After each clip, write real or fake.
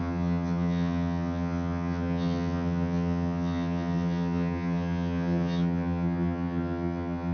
fake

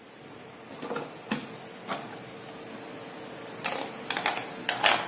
real